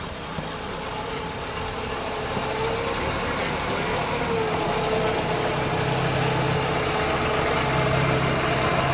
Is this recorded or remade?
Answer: recorded